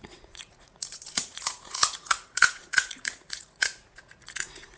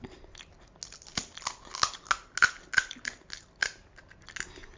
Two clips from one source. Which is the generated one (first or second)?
first